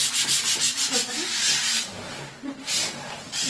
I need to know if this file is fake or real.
real